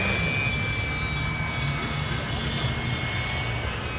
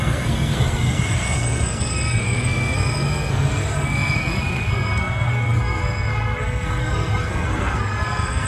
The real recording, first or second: first